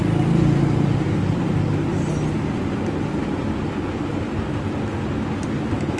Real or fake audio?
real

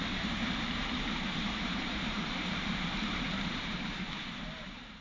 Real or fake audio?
fake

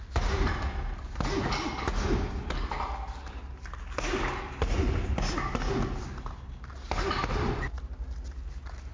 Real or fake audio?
real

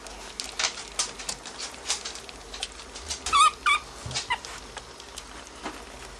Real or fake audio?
real